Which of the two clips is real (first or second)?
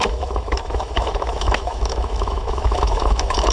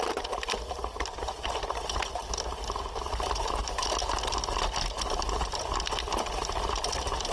second